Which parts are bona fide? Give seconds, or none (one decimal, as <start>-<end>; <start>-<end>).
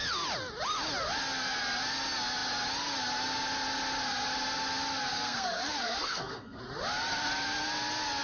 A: 0.0-5.1; 6.6-8.2